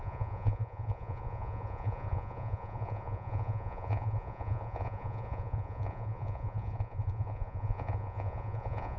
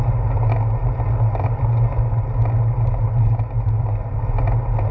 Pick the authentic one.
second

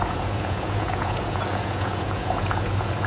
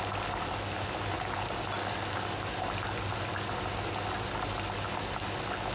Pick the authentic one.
second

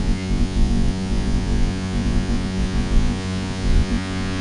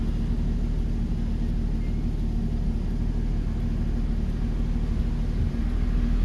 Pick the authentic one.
second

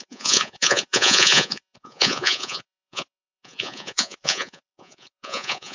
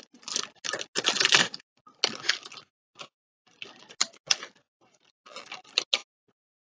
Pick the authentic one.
second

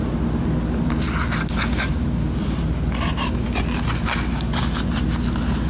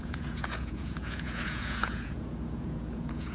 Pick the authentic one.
first